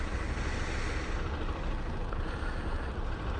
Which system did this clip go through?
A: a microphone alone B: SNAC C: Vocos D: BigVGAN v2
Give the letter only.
A